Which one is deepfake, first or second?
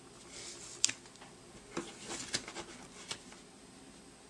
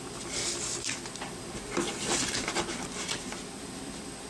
second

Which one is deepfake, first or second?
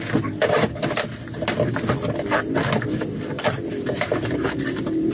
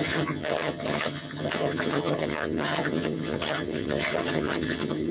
second